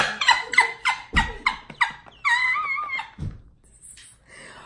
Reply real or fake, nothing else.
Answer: real